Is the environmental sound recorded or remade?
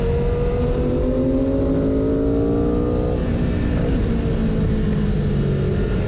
recorded